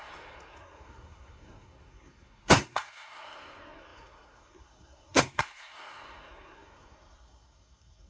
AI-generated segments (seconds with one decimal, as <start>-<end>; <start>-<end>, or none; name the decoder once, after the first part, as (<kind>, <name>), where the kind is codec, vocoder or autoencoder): 0.0-8.1 (codec, SNAC)